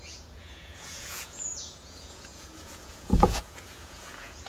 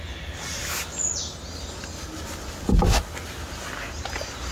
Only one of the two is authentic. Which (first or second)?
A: second